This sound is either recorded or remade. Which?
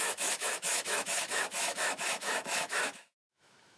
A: remade